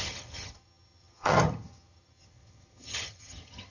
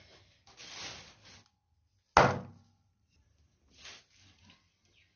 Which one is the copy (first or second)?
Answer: first